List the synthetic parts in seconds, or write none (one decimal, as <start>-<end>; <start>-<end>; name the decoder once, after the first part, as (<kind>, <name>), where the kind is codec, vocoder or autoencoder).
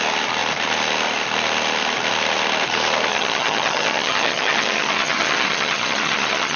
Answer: 3.1-6.6 (vocoder, HiFi-GAN)